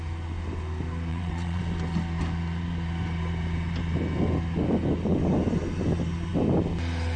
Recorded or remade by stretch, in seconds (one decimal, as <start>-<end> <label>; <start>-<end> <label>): 0.0-1.1 recorded; 1.1-1.6 remade; 1.6-7.2 recorded